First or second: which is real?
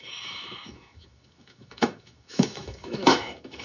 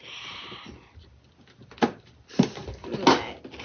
second